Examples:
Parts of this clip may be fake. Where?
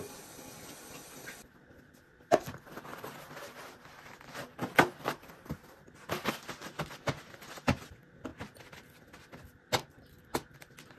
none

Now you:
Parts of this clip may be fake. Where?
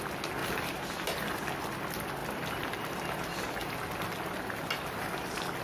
0.4-1.3 (vocoder, BigVGAN v2); 2.2-4.4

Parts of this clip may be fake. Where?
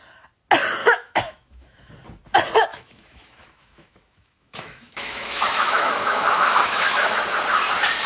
0.8-1.9 (autoencoder, DAC-VAE); 2.7-7.2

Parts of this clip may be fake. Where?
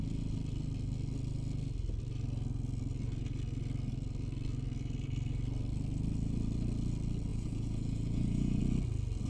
7.3-8.6 (vocoder, Vocos)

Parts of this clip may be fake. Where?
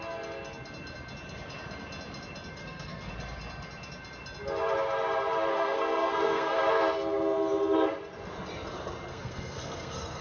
2.6-3.1 (codec, SNAC); 5.5-6.6; 9.1-10.2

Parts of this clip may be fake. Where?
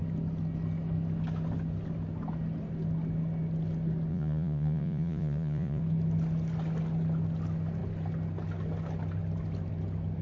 4.1-5.8 (vocoder, Vocos)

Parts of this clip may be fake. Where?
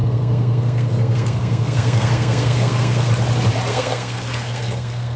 0.0-3.1 (codec, SNAC); 3.7-5.2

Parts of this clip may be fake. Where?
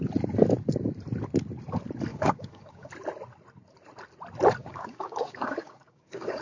2.1-2.9 (codec, DAC); 4.6-6.4